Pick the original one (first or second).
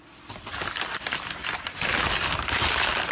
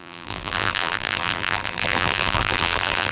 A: first